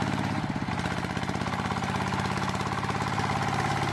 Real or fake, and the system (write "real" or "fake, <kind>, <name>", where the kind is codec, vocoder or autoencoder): real